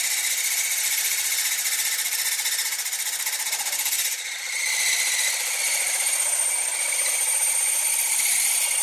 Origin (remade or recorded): recorded